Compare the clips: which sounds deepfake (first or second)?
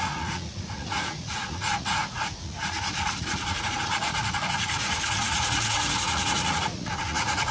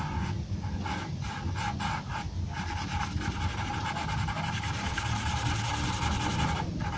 first